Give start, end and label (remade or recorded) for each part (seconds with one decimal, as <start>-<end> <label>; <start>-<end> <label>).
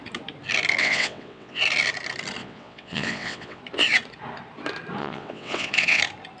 0.0-0.8 recorded; 0.8-1.6 remade; 1.6-2.4 recorded; 2.4-3.6 remade; 3.6-5.0 recorded; 5.0-6.0 remade; 6.0-6.4 recorded